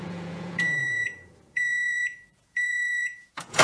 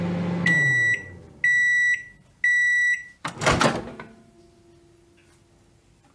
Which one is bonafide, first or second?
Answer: second